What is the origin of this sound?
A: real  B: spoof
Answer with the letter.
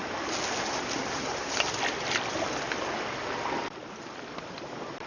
A